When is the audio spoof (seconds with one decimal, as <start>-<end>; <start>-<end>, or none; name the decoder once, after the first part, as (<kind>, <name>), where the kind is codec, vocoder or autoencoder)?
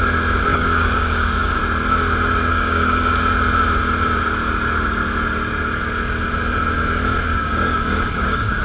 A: 0.5-1.6 (codec, DAC); 2.5-3.1; 7.3-8.6